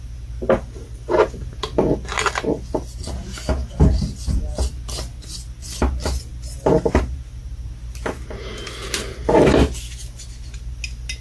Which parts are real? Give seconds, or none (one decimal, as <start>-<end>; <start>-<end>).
0.0-11.2